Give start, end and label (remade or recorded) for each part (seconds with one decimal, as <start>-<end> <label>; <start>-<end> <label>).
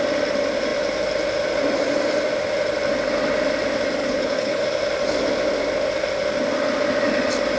0.0-4.0 recorded; 4.0-4.6 remade; 4.6-7.6 recorded